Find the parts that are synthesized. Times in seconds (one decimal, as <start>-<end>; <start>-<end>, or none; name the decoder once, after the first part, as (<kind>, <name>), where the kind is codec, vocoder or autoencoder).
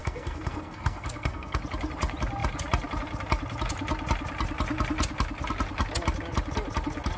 0.0-1.6 (codec, SNAC)